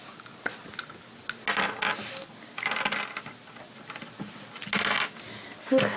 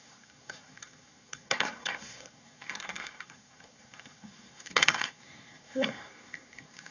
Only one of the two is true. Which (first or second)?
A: first